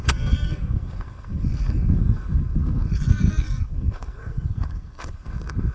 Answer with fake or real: fake